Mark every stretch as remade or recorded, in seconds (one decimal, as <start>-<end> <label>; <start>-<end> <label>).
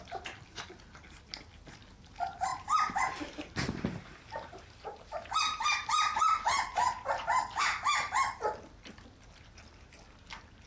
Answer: 0.0-2.5 recorded; 2.5-7.6 remade; 7.6-10.7 recorded